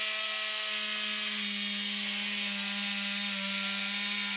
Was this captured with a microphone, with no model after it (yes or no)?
yes